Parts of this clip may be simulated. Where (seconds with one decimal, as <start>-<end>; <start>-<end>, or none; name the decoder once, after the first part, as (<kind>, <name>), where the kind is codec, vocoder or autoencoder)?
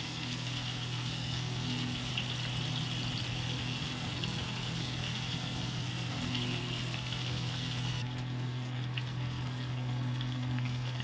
0.0-2.1 (codec, SNAC); 3.3-11.0